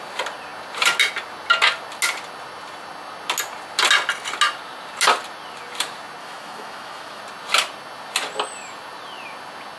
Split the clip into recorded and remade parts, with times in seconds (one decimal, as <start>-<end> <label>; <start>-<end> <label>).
0.0-6.2 recorded; 6.2-7.2 remade; 7.2-9.8 recorded